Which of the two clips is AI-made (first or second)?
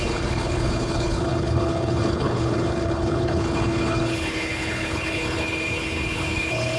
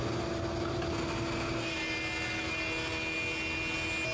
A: first